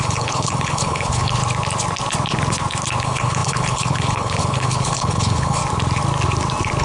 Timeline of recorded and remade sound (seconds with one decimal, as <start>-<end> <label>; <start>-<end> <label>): 0.0-1.4 remade; 1.4-3.0 recorded; 3.0-5.6 remade; 5.6-6.8 recorded